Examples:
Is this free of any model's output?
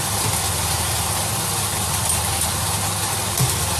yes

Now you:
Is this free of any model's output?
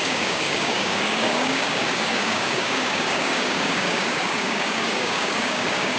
no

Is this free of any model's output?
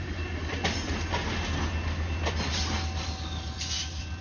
yes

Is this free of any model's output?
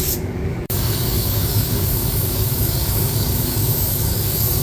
no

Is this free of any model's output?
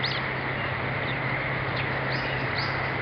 yes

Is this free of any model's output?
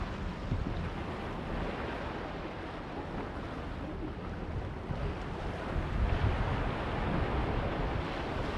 yes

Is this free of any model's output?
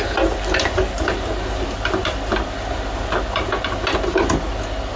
yes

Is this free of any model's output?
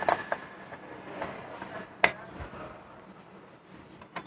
yes